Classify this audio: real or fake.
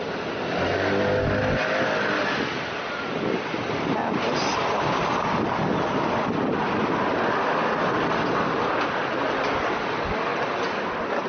real